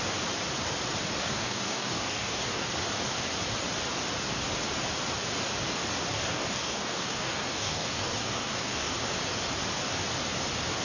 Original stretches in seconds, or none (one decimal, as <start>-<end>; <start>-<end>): 0.0-1.2; 2.7-6.1; 8.9-10.8